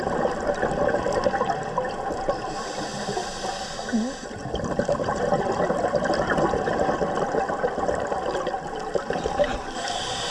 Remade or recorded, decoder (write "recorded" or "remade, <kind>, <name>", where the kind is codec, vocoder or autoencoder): recorded